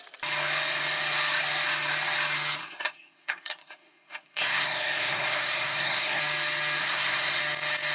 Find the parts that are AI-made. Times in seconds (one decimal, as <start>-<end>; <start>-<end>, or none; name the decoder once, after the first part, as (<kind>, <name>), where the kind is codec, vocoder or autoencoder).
2.6-6.2 (codec, SNAC); 6.8-7.4